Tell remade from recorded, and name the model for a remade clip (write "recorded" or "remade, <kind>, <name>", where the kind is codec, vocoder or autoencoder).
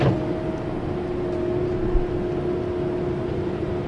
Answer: recorded